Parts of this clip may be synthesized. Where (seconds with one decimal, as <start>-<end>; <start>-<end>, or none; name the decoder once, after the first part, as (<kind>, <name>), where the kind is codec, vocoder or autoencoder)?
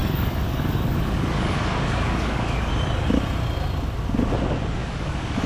0.0-2.7 (codec, DAC); 4.8-5.5